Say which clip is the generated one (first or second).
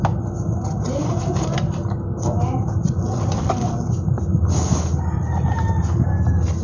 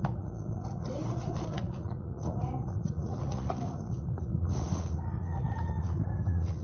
second